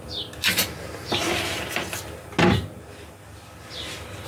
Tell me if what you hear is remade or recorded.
recorded